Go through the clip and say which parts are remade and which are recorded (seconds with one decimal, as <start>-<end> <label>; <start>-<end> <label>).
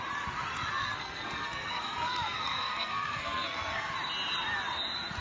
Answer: 0.0-0.8 recorded; 0.8-3.9 remade; 3.9-5.2 recorded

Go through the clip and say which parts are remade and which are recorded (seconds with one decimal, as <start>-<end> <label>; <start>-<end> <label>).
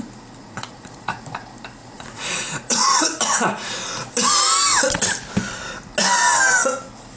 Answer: 0.0-0.4 recorded; 0.4-1.2 remade; 1.2-1.8 recorded; 1.8-3.7 remade; 3.7-7.2 recorded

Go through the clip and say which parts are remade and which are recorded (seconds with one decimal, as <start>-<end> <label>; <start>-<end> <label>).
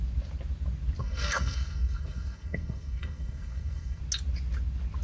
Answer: 0.0-1.0 recorded; 1.0-4.0 remade; 4.0-5.0 recorded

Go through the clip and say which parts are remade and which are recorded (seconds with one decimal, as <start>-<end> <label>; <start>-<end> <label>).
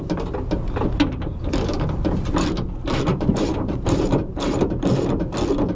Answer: 0.0-3.1 recorded; 3.1-5.2 remade; 5.2-5.8 recorded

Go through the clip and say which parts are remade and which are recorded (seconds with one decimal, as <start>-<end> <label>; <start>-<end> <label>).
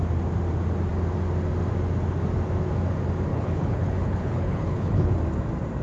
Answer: 0.0-3.3 recorded; 3.3-5.1 remade; 5.1-5.8 recorded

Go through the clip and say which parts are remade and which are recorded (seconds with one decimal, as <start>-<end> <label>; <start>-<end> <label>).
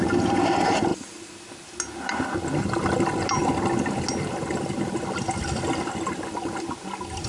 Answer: 0.0-7.3 recorded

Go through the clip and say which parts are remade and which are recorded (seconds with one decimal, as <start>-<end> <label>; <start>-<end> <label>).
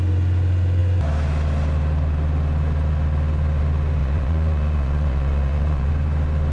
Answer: 0.0-4.0 recorded; 4.0-5.9 remade; 5.9-6.5 recorded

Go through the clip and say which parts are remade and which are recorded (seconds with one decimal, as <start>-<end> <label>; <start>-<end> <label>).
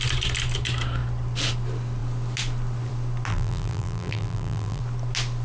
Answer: 0.0-3.3 recorded; 3.3-4.8 remade; 4.8-5.4 recorded